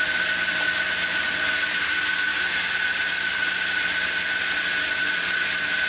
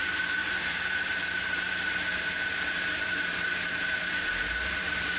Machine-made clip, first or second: second